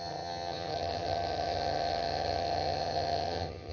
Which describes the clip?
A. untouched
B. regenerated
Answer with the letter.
B